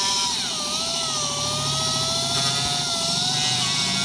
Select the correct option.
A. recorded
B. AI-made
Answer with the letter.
A